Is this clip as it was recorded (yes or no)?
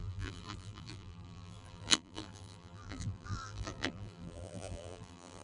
no